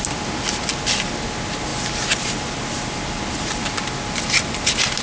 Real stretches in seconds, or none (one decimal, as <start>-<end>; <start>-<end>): 0.0-5.0

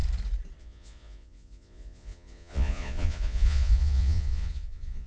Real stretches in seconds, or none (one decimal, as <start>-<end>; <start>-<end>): 0.0-0.6

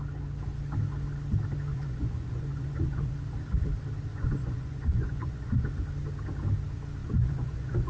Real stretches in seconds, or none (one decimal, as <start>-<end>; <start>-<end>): 0.0-1.7; 3.1-4.1; 5.7-7.0

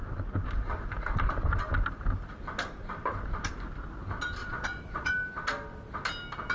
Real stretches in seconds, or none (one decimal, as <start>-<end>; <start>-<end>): 0.0-4.4; 5.1-6.5

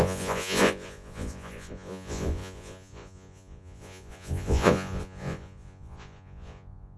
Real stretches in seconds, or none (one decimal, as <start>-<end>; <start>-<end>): none

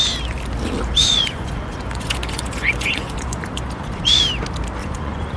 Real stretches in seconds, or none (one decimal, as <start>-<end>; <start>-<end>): 0.0-1.0; 4.2-4.8

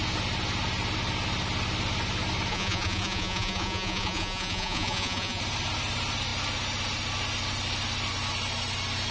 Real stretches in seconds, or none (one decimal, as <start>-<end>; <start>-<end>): 0.0-2.5; 5.4-9.1